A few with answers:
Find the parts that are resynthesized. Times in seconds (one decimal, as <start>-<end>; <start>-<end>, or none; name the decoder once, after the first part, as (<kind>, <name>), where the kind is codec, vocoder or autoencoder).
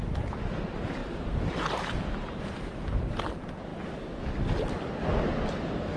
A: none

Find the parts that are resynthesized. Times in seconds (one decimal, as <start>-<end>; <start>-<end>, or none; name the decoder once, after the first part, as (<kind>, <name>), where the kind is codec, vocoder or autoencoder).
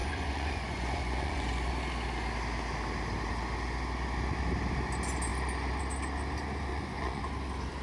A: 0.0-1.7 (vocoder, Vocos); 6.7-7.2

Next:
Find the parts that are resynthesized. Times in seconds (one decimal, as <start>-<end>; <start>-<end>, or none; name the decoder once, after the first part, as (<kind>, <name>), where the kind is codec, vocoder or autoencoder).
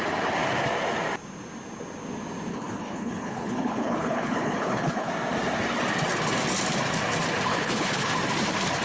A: 2.5-5.1 (codec, HILCodec); 7.5-8.1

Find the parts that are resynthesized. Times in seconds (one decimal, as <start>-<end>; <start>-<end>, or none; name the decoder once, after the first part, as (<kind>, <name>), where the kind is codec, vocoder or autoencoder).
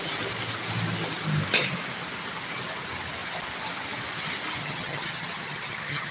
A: 4.6-6.1 (vocoder, HiFi-GAN)